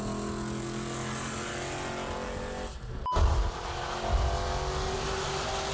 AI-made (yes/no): no